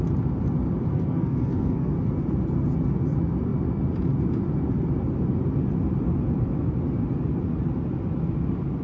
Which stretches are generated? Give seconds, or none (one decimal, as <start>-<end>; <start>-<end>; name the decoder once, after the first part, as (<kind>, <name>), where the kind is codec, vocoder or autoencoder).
0.9-1.9 (codec, SNAC)